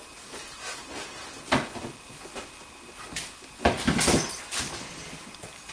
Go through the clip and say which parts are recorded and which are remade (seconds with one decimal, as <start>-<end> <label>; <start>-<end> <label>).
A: 0.0-5.7 recorded